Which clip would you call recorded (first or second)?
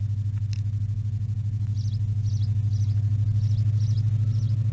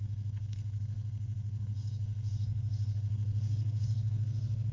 first